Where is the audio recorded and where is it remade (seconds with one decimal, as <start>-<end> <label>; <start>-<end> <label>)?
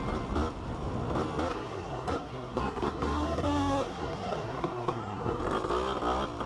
0.0-1.5 recorded; 1.5-5.4 remade; 5.4-6.5 recorded